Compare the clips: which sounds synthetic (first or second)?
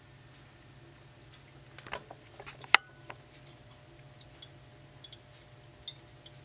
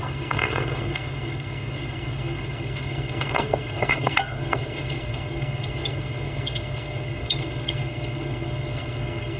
second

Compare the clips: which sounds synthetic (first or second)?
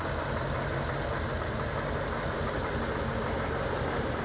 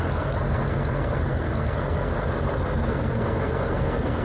second